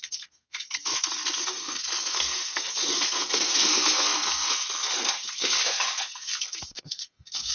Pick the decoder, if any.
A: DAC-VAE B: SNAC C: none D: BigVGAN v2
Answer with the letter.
B